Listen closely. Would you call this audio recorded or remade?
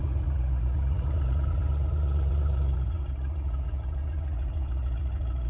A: remade